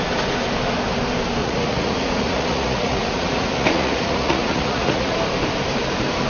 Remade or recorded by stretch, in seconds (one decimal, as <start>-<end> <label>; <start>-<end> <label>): 0.0-1.4 recorded; 1.4-5.1 remade; 5.1-6.3 recorded